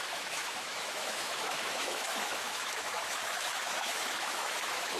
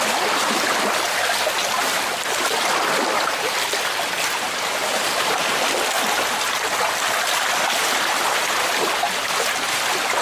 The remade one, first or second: first